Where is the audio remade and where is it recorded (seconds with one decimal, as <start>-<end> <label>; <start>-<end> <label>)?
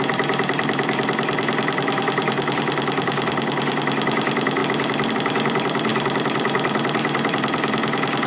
0.0-4.6 remade; 4.6-5.1 recorded; 5.1-8.3 remade